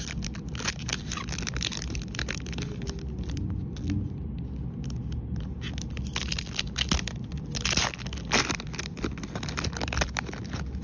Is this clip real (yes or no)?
yes